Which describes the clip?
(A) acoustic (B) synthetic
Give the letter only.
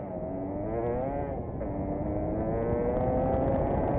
A